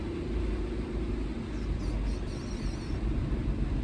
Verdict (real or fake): real